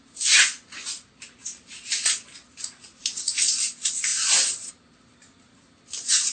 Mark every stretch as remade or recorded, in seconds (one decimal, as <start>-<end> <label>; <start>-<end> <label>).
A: 0.0-6.3 recorded